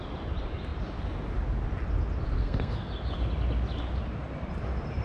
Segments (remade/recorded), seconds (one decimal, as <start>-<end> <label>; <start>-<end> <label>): 0.0-2.4 recorded; 2.4-2.9 remade; 2.9-5.0 recorded